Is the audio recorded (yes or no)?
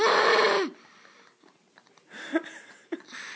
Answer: yes